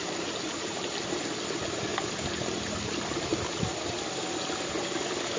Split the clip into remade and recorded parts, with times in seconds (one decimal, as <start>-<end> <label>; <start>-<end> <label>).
0.0-5.4 recorded